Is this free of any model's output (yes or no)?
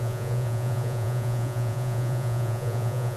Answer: no